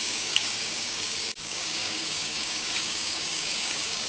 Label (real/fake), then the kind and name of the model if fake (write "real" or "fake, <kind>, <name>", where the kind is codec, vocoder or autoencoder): fake, codec, DAC